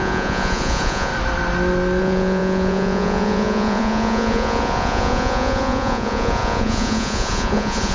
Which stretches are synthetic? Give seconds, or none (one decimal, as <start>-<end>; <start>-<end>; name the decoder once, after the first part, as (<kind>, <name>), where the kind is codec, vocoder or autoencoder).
0.0-1.1 (vocoder, Vocos); 2.0-7.9